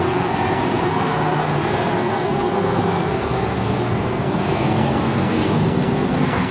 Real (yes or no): no